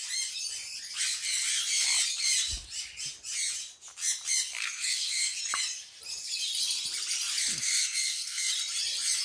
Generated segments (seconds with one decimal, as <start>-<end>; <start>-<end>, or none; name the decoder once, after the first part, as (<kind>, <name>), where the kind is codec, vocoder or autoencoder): 4.5-5.4 (codec, SNAC); 7.5-8.5